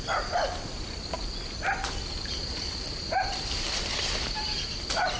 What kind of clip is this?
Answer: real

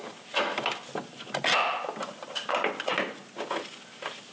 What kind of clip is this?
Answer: real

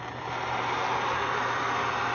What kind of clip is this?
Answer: real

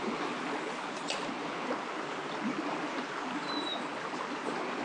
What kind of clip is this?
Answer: real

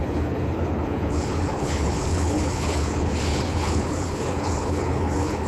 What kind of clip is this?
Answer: fake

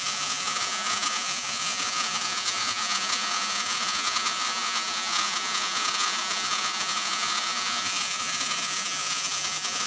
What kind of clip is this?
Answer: fake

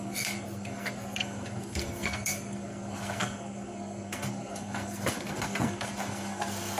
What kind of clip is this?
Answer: fake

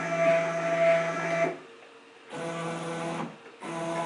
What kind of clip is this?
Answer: real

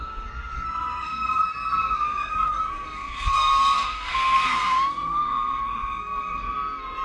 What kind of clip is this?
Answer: fake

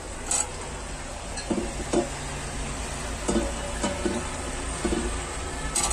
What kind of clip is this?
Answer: real